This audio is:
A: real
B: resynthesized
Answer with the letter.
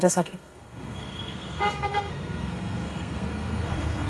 B